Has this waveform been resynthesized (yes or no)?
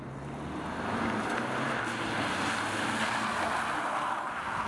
no